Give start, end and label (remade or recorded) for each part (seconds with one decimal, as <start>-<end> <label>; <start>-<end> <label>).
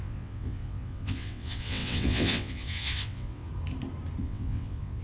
0.0-3.5 remade; 3.5-4.2 recorded; 4.2-5.0 remade